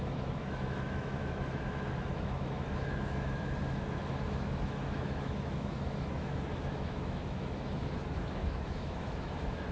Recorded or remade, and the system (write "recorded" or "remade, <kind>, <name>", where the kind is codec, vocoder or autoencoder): remade, autoencoder, DAC-VAE